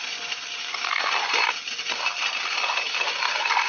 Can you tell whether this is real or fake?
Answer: real